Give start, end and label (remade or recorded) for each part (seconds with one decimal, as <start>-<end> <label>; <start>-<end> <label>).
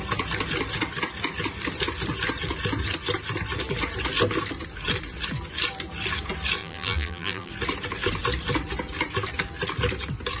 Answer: 0.0-6.6 recorded; 6.6-7.5 remade; 7.5-10.4 recorded